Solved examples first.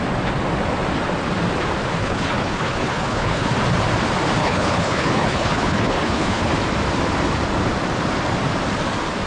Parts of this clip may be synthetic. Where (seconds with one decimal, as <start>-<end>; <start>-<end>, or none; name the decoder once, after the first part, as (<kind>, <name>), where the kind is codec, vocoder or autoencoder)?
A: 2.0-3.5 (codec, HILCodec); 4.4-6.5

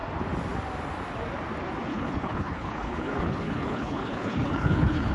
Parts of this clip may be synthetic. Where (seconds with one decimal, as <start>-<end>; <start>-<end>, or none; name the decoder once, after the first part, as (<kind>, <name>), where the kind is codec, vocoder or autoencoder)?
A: 1.9-5.1 (codec, HILCodec)

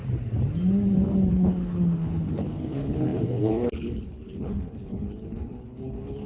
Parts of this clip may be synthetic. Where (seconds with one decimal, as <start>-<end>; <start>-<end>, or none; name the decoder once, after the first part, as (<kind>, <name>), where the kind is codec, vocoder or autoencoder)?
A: 1.3-6.3 (codec, HILCodec)

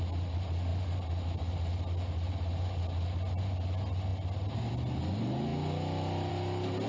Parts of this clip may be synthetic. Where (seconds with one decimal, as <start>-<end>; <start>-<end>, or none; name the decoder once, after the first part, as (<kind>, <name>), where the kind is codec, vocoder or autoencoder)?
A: none

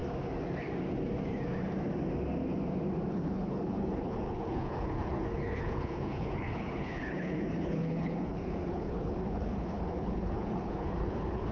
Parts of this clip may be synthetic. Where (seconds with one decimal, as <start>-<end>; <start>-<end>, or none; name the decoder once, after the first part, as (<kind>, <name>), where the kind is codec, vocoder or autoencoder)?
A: 3.1-11.5 (codec, HILCodec)

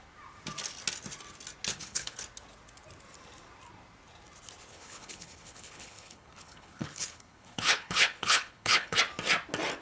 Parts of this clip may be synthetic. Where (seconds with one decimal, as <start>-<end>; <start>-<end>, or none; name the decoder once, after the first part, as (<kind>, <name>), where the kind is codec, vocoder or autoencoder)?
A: 1.7-2.2 (codec, HILCodec); 4.7-9.0

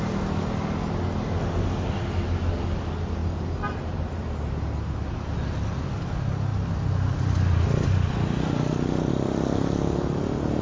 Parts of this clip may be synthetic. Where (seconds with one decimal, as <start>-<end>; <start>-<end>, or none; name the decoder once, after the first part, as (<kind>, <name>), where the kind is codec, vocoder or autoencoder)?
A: none